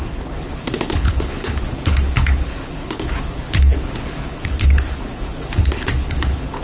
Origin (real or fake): fake